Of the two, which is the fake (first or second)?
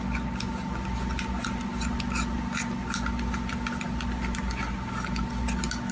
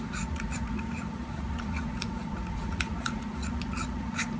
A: second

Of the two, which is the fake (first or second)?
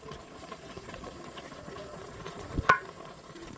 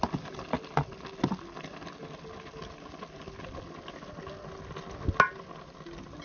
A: first